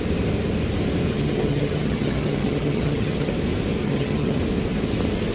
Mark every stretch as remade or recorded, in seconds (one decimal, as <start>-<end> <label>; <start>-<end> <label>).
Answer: 0.0-1.1 recorded; 1.1-3.3 remade; 3.3-3.8 recorded; 3.8-4.4 remade; 4.4-5.3 recorded